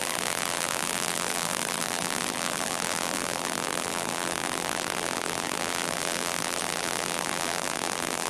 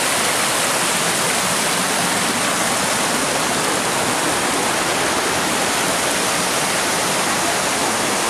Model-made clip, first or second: first